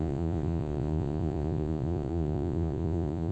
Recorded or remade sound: remade